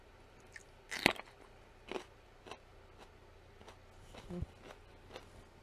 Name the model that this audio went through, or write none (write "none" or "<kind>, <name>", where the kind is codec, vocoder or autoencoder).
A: none